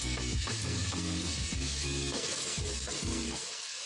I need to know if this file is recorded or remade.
remade